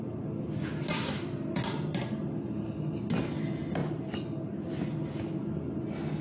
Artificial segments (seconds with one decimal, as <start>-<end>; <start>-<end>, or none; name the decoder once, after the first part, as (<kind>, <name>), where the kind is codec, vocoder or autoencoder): none